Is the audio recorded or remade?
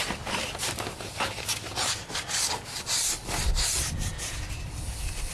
recorded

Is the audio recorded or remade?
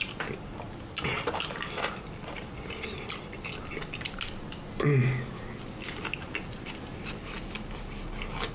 recorded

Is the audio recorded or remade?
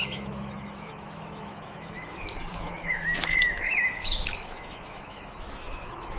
remade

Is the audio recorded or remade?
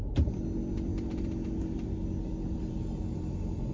recorded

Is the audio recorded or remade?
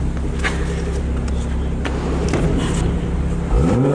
recorded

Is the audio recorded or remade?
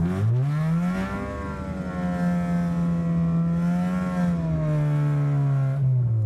recorded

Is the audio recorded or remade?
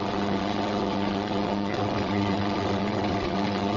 remade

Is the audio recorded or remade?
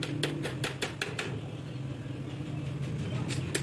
recorded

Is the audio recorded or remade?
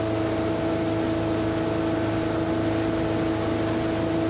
recorded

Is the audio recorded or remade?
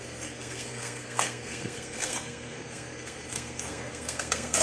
remade